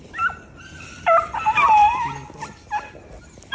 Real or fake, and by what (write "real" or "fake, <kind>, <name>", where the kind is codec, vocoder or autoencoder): real